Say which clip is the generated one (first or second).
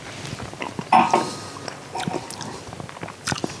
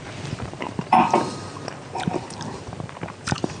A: second